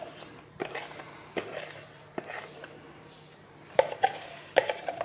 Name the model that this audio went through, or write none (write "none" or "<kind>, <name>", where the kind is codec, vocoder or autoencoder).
vocoder, BigVGAN v2